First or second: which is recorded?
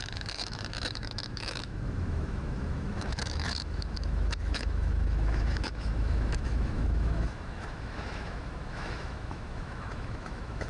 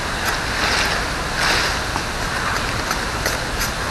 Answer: second